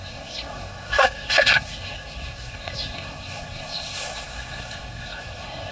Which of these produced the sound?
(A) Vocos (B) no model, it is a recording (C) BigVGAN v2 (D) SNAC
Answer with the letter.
D